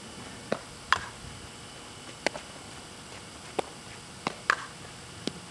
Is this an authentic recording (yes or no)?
yes